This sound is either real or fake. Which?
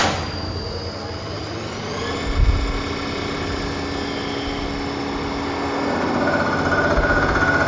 real